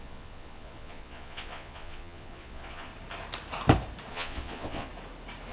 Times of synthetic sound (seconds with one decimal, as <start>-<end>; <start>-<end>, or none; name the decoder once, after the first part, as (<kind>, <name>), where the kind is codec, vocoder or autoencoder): 0.0-2.9 (vocoder, Vocos); 4.1-4.9